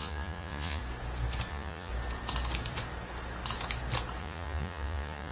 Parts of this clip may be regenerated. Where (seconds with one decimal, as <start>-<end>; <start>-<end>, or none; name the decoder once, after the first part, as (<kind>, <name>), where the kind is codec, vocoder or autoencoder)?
0.0-0.8 (vocoder, Vocos); 1.5-1.9; 4.2-5.3